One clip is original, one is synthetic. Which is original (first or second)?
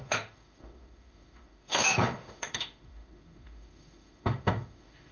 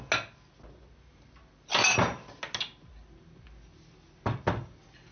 second